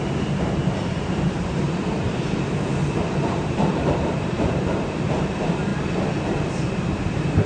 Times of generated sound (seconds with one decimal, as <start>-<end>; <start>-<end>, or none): 0.0-2.7; 3.2-5.7; 6.2-7.5